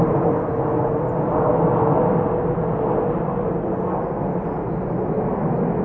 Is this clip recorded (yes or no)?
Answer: yes